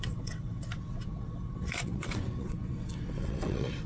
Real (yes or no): no